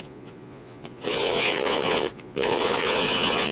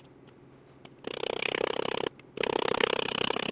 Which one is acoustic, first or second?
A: second